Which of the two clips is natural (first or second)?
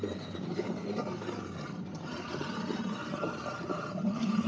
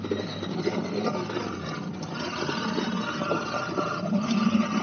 second